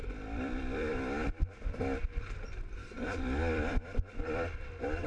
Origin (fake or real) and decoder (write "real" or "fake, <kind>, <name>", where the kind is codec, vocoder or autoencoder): fake, vocoder, BigVGAN v2